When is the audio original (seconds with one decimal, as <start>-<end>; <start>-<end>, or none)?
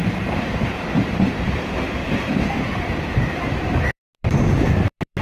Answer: 1.6-2.0